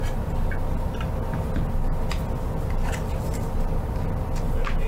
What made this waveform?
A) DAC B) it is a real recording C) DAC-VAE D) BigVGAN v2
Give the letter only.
B